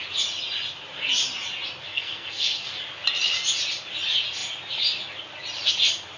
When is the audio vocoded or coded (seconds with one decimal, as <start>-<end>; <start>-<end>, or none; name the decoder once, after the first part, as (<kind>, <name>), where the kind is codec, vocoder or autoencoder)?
1.9-2.7 (codec, SNAC)